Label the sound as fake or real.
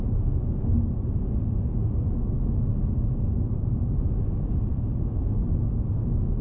real